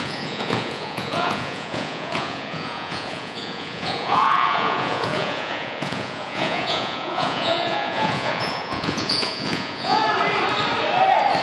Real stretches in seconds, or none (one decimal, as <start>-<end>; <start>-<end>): 10.0-11.4